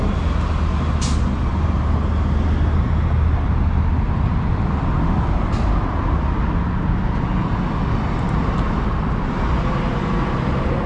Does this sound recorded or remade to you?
recorded